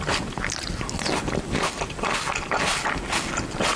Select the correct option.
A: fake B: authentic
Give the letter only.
B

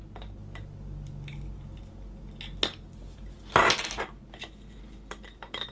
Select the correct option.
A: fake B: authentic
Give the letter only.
B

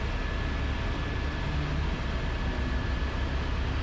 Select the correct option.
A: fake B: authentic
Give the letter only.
B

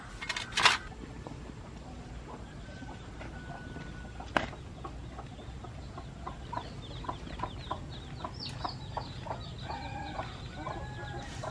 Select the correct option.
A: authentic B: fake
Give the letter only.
A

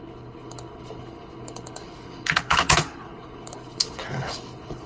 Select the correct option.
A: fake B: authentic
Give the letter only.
A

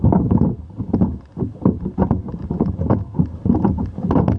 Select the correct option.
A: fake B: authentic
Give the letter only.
B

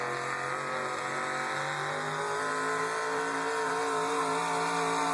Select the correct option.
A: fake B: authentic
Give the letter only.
B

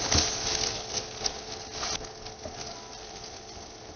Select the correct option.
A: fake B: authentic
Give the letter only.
B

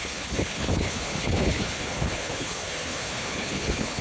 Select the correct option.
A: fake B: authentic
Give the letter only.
A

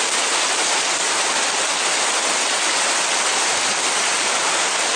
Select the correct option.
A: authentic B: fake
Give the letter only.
A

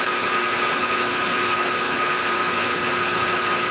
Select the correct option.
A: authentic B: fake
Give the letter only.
B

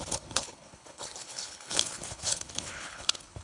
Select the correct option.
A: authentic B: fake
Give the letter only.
B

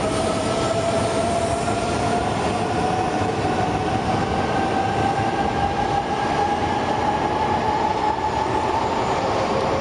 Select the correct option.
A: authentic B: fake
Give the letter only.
A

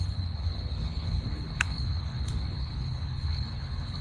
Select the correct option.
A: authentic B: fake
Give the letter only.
B